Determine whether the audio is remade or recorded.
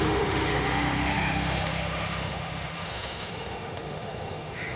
remade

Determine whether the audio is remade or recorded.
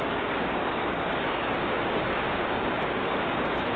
remade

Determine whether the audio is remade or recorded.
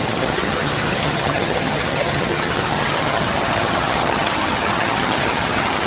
remade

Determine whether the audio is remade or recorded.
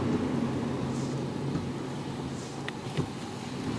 recorded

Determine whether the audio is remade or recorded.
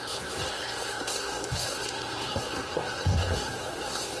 remade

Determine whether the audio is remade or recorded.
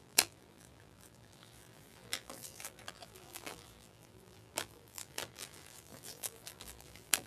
remade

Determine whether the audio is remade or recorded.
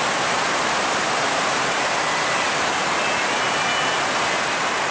recorded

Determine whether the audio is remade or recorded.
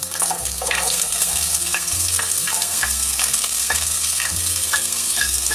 remade